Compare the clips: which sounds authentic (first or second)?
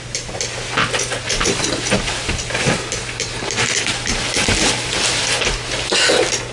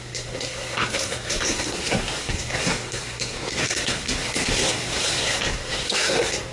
first